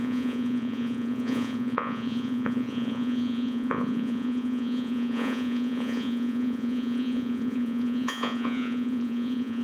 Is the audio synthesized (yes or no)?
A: yes